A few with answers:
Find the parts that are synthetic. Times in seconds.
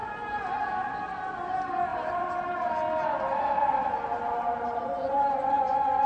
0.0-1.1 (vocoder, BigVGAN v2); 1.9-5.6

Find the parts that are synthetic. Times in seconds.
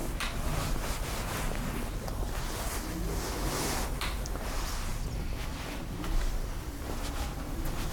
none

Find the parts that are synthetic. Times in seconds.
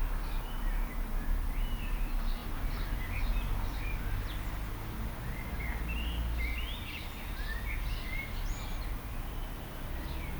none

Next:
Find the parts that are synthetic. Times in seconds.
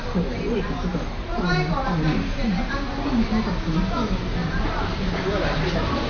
0.9-1.7 (vocoder, BigVGAN v2); 4.4-6.1